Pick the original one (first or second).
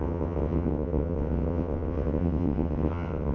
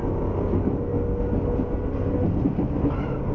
second